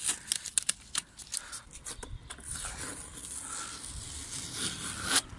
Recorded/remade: recorded